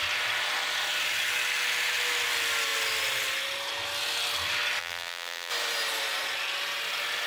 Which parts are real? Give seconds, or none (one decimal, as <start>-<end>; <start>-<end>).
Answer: 0.0-4.8; 5.5-7.3